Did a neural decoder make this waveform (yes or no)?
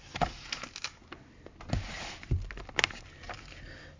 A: no